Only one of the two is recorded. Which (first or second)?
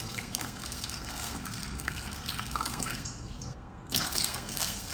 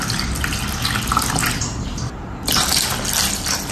second